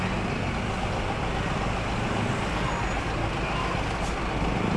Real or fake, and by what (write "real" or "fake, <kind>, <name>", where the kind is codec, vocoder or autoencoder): real